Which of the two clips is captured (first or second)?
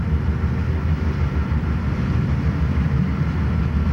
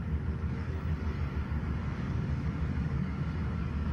first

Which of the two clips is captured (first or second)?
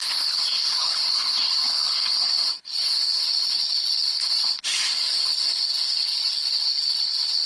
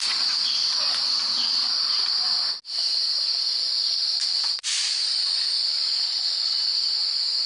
second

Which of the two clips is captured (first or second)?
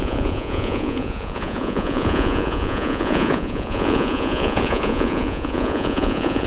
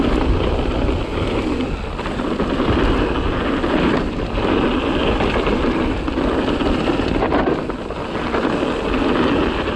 second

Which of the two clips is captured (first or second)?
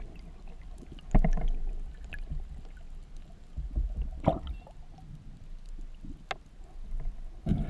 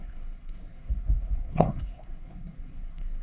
first